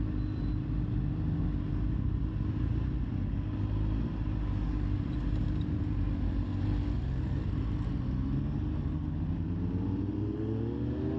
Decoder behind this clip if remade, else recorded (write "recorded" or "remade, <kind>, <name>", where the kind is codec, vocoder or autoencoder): recorded